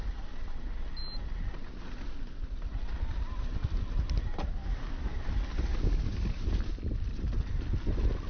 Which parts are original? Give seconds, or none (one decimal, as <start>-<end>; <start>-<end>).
0.0-4.6; 5.2-5.7; 6.5-8.3